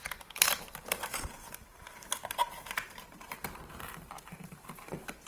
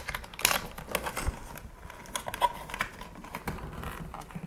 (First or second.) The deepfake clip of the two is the first